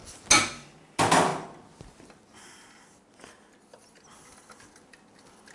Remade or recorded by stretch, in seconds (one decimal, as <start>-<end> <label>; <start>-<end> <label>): 0.0-5.5 recorded